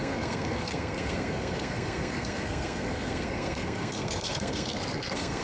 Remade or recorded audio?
remade